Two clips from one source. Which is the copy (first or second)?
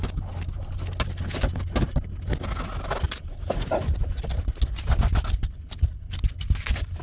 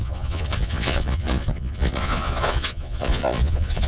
second